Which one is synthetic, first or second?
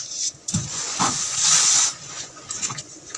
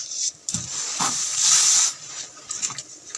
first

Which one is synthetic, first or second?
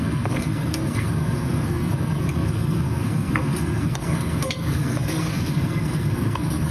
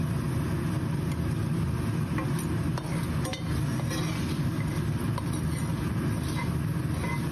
first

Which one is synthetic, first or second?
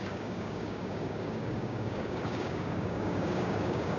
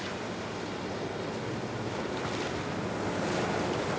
first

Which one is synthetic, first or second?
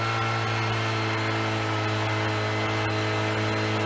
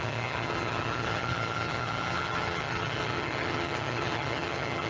second